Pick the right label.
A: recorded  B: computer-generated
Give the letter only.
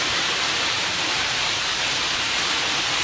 B